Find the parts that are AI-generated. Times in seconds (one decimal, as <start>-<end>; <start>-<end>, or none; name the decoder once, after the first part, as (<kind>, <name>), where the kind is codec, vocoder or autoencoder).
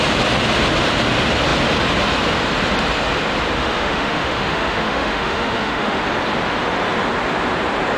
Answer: 3.6-6.0 (autoencoder, DAC-VAE)